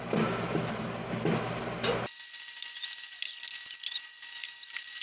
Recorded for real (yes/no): yes